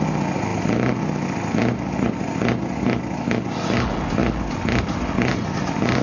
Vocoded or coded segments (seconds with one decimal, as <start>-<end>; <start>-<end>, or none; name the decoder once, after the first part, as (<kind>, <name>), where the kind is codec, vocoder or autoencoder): none